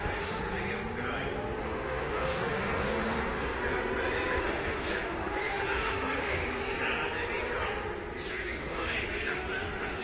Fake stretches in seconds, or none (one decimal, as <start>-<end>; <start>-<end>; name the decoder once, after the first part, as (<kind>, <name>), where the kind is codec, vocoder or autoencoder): 0.0-0.4 (autoencoder, DAC-VAE); 1.6-3.6; 4.4-6.4; 8.3-10.0